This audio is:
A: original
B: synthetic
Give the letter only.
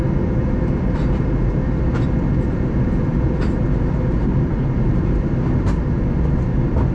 A